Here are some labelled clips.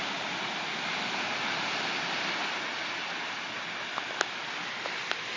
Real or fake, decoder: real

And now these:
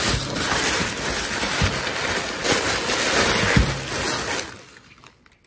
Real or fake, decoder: real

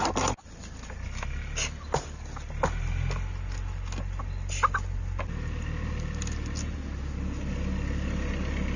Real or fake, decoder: real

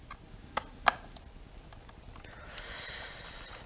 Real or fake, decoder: real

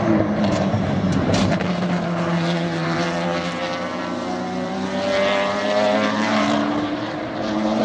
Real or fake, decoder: fake, vocoder, BigVGAN v2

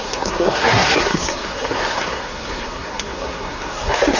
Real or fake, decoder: fake, codec, SNAC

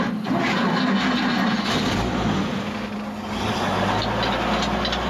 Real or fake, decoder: real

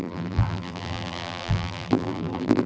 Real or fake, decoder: fake, vocoder, BigVGAN v2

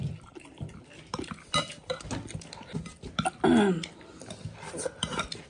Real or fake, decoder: real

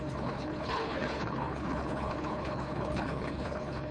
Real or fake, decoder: fake, codec, HILCodec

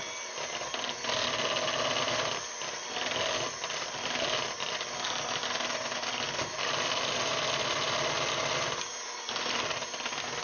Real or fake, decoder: real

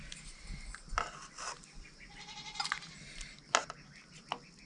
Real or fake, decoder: real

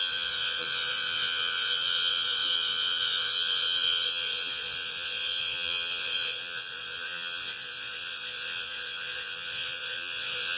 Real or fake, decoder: fake, vocoder, Vocos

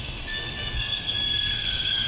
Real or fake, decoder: fake, codec, SNAC